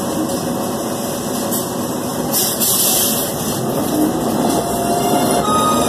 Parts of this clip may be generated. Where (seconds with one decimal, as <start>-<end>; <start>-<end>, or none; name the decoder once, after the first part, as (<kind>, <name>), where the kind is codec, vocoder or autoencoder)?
2.1-5.9 (vocoder, BigVGAN v2)